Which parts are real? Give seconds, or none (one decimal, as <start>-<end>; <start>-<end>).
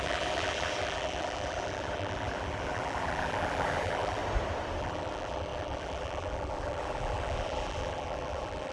4.2-4.8